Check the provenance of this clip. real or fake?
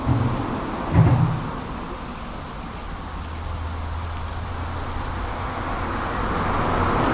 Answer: real